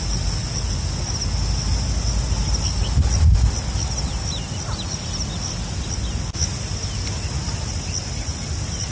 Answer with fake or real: real